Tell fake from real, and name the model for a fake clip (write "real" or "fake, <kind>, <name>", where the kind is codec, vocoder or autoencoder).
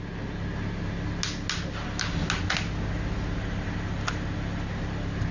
real